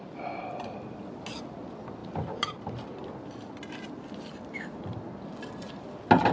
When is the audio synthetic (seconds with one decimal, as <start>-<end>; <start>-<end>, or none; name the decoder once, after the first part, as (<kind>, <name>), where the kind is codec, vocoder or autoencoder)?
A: none